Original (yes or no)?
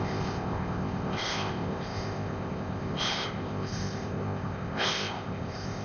no